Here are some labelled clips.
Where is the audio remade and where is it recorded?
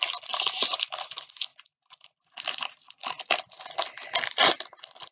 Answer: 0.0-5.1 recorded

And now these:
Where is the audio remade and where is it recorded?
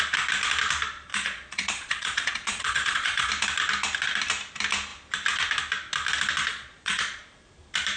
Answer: 0.0-1.1 recorded; 1.1-3.3 remade; 3.3-6.5 recorded; 6.5-7.2 remade; 7.2-8.0 recorded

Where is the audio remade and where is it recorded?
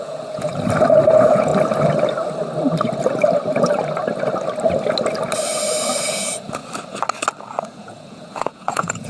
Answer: 0.0-0.5 remade; 0.5-1.1 recorded; 1.1-1.5 remade; 1.5-6.0 recorded; 6.0-6.6 remade; 6.6-7.6 recorded; 7.6-9.1 remade